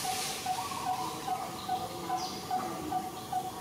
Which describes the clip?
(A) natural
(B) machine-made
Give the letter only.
A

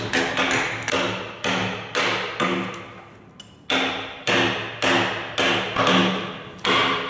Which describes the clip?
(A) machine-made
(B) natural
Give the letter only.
B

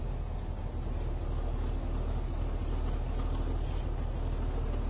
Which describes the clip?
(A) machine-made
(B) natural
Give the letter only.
B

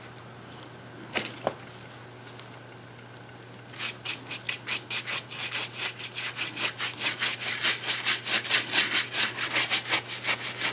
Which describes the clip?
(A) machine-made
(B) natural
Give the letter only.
B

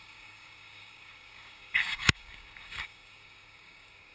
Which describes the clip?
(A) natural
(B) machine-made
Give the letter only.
B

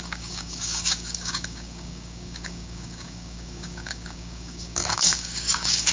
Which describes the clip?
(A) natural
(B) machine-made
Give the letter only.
B